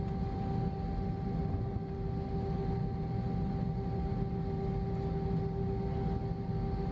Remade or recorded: recorded